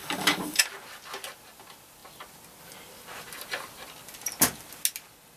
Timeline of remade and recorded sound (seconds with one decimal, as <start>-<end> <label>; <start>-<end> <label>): 0.0-0.6 remade; 0.6-5.4 recorded